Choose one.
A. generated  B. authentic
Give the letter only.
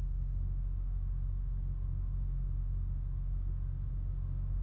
A